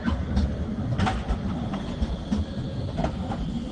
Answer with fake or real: real